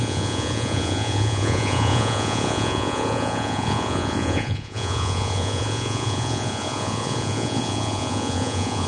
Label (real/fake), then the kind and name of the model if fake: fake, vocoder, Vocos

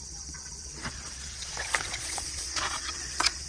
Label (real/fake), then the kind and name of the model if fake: fake, vocoder, Vocos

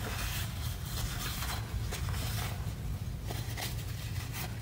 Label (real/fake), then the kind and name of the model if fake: real